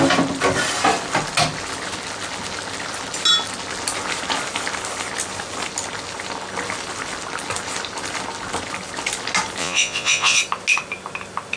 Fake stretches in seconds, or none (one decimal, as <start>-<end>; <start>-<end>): 9.6-10.4